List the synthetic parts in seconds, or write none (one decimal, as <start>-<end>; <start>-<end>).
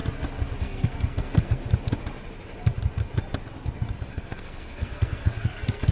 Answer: 0.6-1.6; 4.1-5.9